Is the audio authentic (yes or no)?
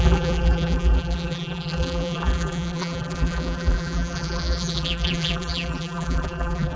no